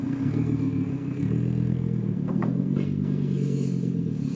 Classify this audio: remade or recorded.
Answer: remade